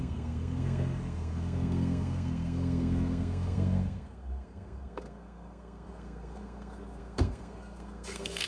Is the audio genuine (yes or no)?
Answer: no